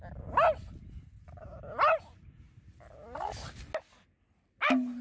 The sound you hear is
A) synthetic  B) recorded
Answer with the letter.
B